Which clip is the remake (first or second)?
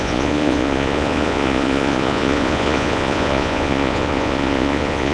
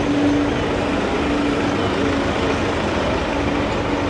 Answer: first